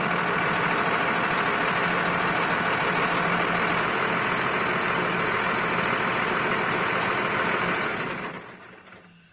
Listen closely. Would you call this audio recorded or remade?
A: recorded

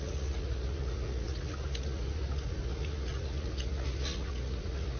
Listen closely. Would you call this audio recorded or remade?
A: remade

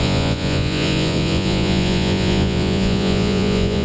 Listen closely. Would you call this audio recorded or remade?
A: remade